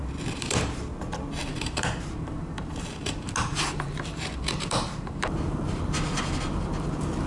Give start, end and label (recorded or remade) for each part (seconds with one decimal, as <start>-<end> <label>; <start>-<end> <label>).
0.0-0.8 remade; 0.8-1.4 recorded; 1.4-5.8 remade; 5.8-7.3 recorded